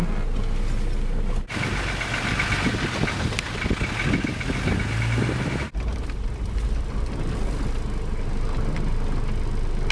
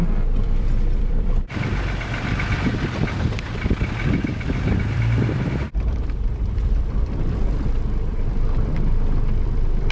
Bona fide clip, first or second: first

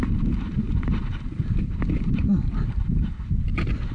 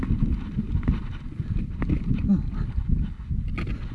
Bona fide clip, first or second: second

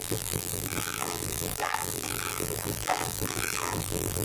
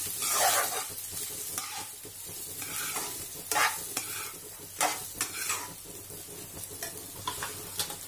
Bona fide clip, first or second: second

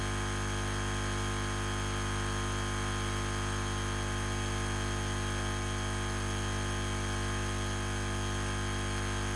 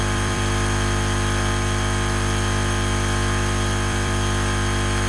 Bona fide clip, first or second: first